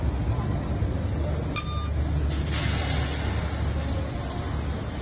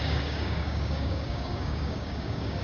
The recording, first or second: first